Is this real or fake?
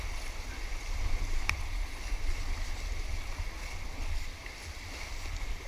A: real